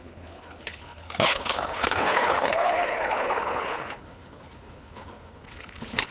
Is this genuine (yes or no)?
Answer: no